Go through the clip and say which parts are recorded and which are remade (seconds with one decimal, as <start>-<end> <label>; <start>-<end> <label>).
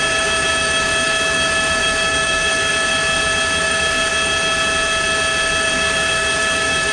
0.0-2.7 remade; 2.7-3.6 recorded; 3.6-4.1 remade; 4.1-5.7 recorded; 5.7-6.9 remade